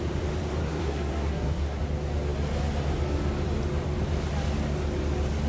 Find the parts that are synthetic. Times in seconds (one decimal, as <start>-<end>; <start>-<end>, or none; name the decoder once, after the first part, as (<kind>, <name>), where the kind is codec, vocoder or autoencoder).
0.6-1.8 (codec, SNAC)